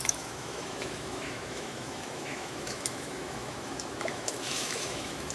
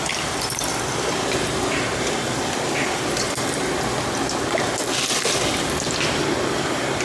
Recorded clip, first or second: second